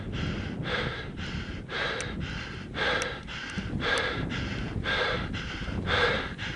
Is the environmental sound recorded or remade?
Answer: remade